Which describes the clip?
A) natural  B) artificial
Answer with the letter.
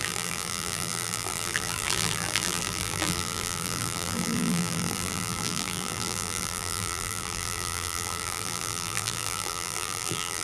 B